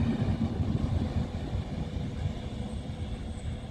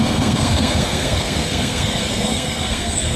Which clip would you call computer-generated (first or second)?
second